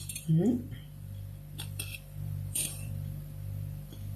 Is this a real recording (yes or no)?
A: no